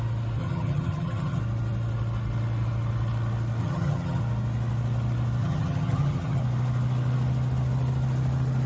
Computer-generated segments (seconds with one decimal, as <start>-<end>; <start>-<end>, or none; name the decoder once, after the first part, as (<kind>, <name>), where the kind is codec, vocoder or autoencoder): 0.4-1.4 (vocoder, HiFi-GAN); 3.6-4.2; 5.4-6.4